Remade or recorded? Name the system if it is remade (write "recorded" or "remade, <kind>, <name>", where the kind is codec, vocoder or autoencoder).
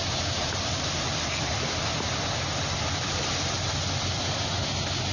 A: recorded